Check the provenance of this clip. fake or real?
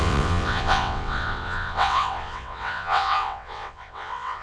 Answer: fake